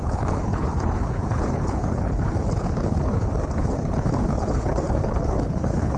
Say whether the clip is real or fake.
fake